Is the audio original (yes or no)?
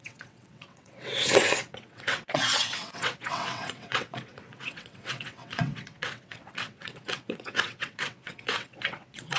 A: no